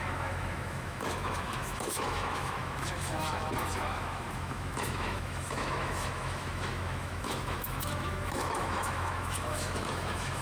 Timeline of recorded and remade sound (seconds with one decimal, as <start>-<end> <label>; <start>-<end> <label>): 0.0-10.4 remade